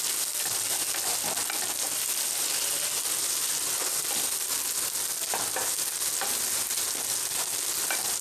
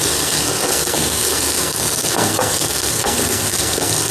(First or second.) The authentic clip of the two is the first